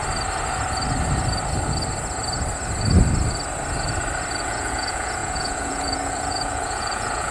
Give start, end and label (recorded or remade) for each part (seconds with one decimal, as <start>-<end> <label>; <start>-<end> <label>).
0.0-4.4 recorded; 4.4-7.3 remade